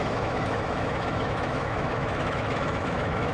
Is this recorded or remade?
remade